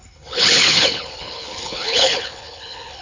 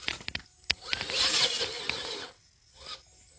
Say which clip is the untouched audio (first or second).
second